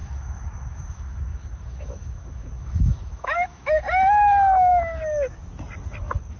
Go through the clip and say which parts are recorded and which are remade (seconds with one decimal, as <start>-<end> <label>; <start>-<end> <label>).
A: 0.0-3.8 remade; 3.8-4.7 recorded; 4.7-5.6 remade; 5.6-6.4 recorded